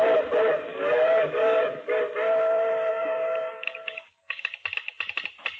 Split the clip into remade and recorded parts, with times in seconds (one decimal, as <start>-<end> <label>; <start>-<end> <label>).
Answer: 0.0-0.7 recorded; 0.7-2.0 remade; 2.0-2.9 recorded; 2.9-4.5 remade; 4.5-5.6 recorded